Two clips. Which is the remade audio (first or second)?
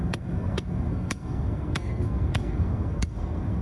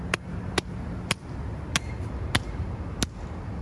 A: first